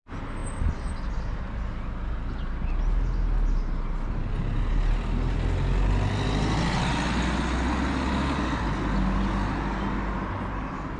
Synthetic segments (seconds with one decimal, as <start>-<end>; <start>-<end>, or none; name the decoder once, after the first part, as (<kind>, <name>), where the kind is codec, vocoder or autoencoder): none